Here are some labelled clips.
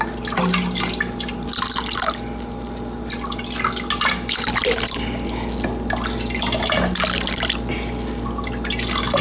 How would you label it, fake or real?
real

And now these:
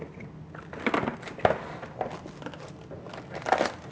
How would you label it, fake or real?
real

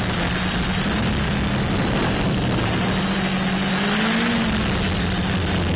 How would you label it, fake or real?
real